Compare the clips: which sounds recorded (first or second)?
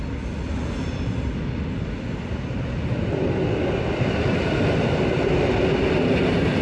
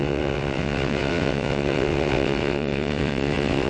first